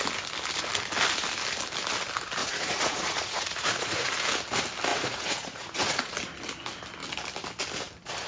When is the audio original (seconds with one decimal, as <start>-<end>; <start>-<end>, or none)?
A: 0.0-2.4; 4.1-4.9; 6.1-8.3